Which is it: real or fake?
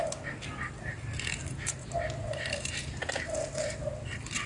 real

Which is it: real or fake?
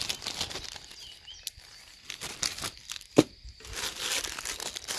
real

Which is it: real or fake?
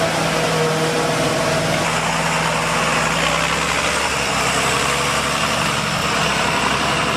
real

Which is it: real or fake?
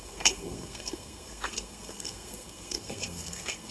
fake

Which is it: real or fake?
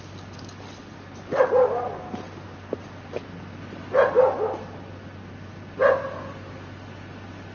real